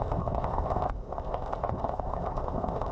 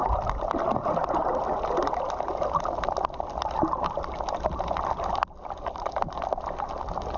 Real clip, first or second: second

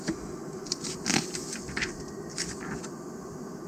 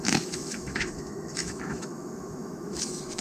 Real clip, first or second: first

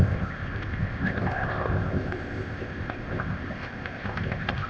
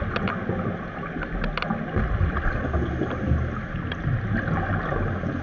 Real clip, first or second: second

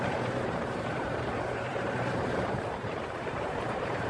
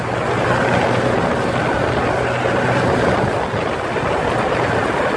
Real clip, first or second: second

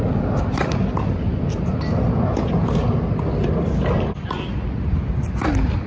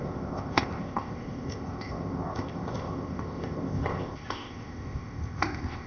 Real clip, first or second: first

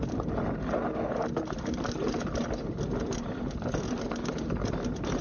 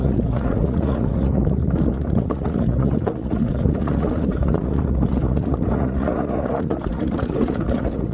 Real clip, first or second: first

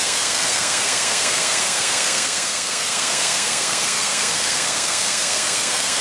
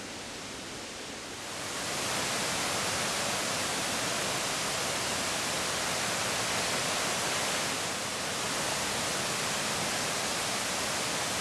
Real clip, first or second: second